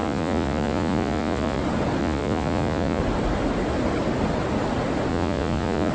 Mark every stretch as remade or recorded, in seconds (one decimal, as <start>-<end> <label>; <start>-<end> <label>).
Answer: 0.0-1.6 remade; 1.6-2.0 recorded; 2.0-3.0 remade; 3.0-5.1 recorded; 5.1-5.9 remade

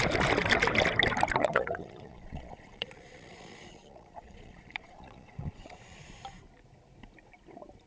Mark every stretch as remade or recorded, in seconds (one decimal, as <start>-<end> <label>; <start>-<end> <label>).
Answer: 0.0-1.4 recorded; 1.4-6.1 remade; 6.1-7.9 recorded

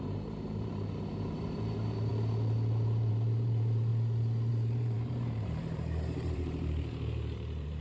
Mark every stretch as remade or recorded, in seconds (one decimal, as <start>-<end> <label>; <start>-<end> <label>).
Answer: 0.0-2.1 remade; 2.1-3.1 recorded; 3.1-3.9 remade; 3.9-4.5 recorded; 4.5-7.8 remade